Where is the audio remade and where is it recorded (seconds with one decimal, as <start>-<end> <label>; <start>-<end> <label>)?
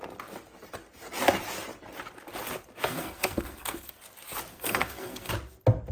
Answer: 0.0-2.9 recorded; 2.9-4.0 remade; 4.0-4.5 recorded; 4.5-5.3 remade; 5.3-5.9 recorded